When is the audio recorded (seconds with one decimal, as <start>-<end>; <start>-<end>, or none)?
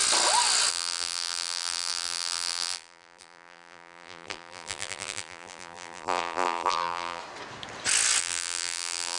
0.0-0.7; 7.2-8.2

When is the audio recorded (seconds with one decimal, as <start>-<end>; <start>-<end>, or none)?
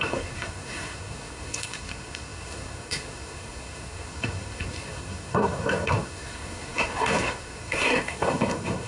none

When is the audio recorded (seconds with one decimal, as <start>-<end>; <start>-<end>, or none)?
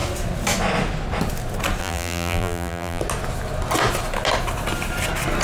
0.0-1.8; 3.0-5.4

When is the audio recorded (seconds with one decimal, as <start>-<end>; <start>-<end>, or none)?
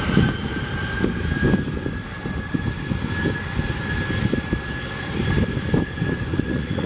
0.0-6.3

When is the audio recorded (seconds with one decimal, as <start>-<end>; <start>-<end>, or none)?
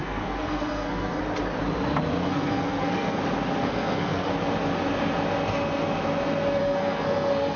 1.2-2.2; 3.2-3.6; 4.3-6.6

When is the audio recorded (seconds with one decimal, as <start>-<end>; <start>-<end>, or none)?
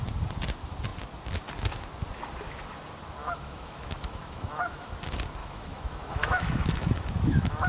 0.0-3.2; 4.9-5.4